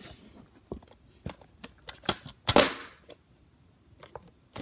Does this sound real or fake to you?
real